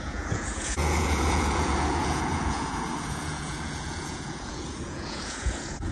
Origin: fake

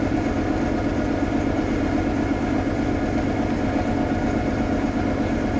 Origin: real